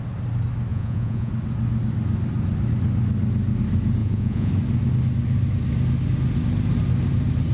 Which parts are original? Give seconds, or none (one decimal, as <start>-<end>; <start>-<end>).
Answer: 0.0-0.7; 1.3-4.0; 4.5-7.5